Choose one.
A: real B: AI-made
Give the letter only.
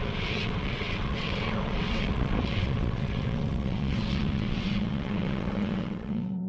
B